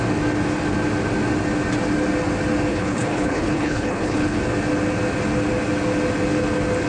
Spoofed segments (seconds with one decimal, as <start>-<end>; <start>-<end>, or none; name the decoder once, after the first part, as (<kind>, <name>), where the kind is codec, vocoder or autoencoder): 2.7-4.4 (codec, HILCodec)

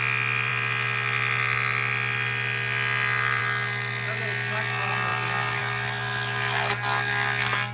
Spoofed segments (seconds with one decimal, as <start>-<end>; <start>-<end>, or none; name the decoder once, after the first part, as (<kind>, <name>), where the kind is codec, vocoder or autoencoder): none

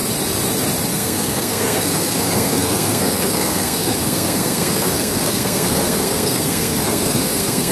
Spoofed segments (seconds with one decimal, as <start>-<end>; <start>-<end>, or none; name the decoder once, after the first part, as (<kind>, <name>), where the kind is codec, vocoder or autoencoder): 0.9-7.7 (codec, SNAC)

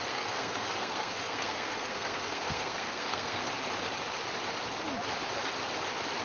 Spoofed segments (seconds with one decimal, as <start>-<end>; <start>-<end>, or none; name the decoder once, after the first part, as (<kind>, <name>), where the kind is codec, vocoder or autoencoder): 0.0-3.4 (codec, SNAC)

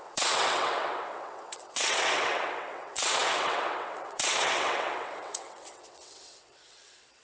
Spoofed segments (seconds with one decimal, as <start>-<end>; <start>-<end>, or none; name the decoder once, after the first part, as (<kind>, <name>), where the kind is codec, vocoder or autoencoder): 0.0-7.2 (vocoder, WaveNeXt)

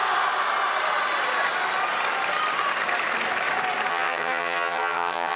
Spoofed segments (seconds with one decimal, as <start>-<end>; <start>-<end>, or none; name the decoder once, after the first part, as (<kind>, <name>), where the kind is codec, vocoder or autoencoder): 3.9-5.4 (vocoder, HiFi-GAN)